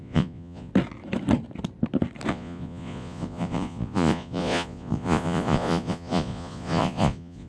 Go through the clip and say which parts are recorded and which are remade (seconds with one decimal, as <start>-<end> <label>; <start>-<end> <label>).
0.0-0.7 remade; 0.7-2.3 recorded; 2.3-7.5 remade